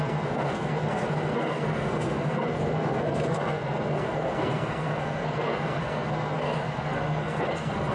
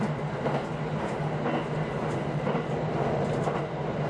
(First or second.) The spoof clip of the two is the first